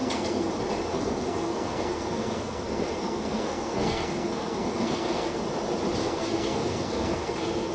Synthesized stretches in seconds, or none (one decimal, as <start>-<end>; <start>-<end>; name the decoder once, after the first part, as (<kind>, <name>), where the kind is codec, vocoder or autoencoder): 0.0-0.5 (codec, SNAC); 0.9-5.4; 6.0-7.7